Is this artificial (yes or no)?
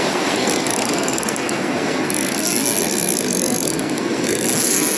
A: yes